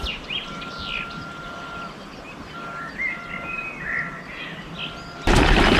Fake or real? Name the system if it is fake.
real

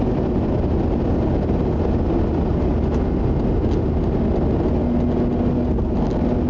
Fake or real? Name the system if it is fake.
real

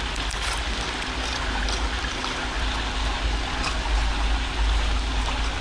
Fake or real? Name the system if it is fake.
real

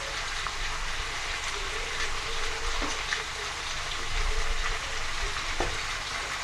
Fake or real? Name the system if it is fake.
fake, vocoder, BigVGAN v2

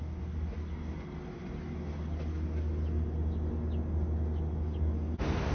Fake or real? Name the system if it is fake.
real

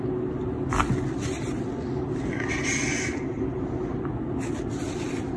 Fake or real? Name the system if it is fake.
real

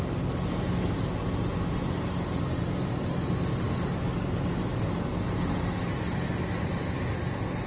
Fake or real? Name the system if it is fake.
real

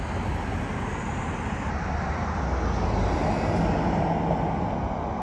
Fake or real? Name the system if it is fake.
real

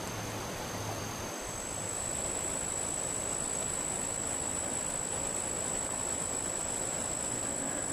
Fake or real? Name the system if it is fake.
fake, vocoder, BigVGAN v2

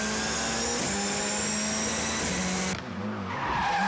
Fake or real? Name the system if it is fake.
real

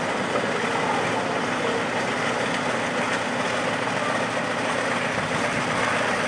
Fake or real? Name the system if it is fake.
real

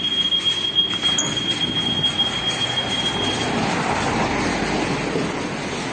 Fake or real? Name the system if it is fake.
real